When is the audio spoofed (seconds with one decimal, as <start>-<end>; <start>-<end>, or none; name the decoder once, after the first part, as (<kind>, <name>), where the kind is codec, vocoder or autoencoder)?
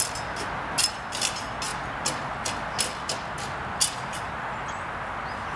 none